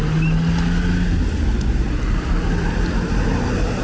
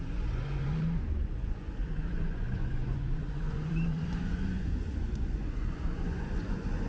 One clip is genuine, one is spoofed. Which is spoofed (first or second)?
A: second